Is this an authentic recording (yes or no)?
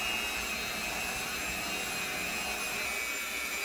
yes